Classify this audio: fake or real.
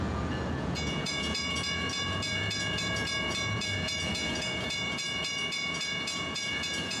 fake